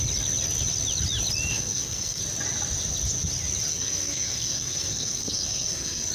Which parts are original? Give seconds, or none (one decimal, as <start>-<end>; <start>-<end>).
0.0-1.5; 2.2-3.7